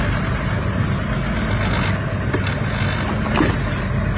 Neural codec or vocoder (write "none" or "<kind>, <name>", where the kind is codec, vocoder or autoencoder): none